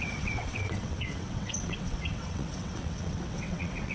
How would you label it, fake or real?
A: fake